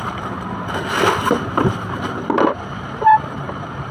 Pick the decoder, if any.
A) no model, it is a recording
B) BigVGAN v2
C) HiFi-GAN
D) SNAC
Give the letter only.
B